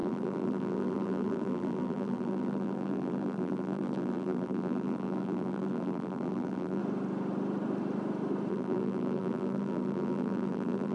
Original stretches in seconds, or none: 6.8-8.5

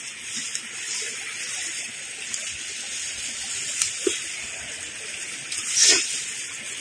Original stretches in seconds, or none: 0.0-6.8

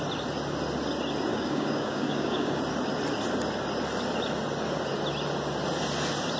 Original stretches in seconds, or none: 0.0-1.3; 2.6-6.4